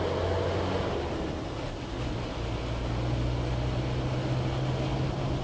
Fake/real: real